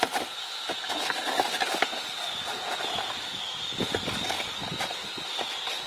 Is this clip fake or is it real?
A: real